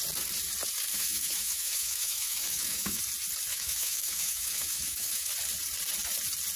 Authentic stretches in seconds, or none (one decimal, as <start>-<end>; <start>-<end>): 0.0-0.9; 3.0-3.5; 5.3-6.6

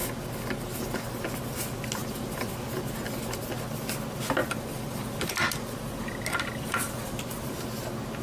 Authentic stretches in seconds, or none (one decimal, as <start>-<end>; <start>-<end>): 0.0-2.0; 2.5-4.4; 7.2-8.2

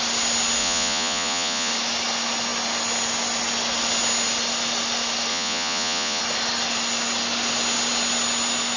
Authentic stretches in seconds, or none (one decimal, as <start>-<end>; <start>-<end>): 0.0-0.6; 1.7-5.3; 6.2-8.8

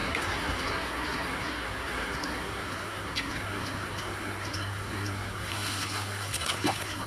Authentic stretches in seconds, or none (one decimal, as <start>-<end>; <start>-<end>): none

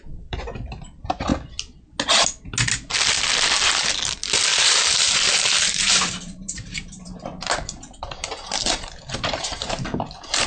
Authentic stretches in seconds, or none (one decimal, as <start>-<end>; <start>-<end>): 1.3-4.6

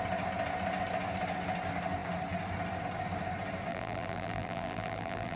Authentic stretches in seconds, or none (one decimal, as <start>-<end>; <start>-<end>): 0.0-3.7

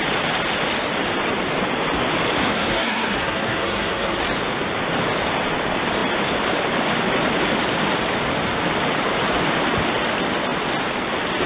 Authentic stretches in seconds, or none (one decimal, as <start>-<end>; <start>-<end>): 0.0-2.4; 4.2-11.5